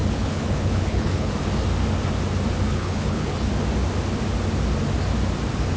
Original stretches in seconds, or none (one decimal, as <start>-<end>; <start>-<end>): 1.3-2.7; 3.5-5.8